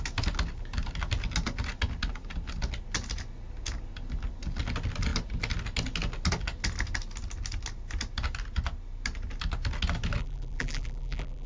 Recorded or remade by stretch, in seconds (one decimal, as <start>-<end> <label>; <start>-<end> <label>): 0.0-10.2 recorded; 10.2-11.5 remade